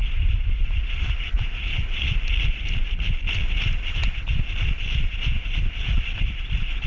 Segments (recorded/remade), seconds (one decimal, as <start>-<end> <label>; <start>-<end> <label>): 0.0-1.7 remade; 1.7-3.5 recorded; 3.5-4.0 remade; 4.0-5.6 recorded; 5.6-6.9 remade